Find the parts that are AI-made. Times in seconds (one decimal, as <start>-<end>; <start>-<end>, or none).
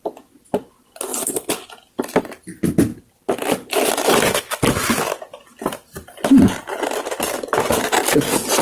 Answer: none